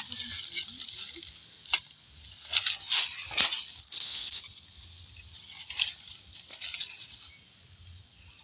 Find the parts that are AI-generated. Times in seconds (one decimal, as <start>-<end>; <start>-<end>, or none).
3.8-4.4